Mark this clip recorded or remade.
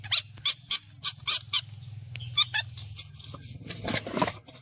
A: recorded